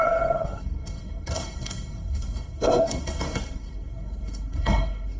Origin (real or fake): fake